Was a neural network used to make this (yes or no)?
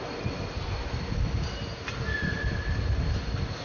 no